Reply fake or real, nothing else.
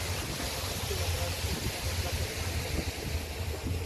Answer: real